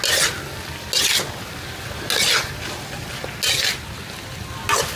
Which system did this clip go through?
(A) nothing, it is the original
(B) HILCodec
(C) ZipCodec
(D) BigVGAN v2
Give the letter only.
A